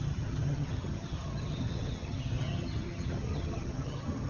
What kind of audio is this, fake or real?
fake